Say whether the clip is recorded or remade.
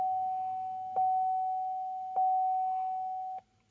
recorded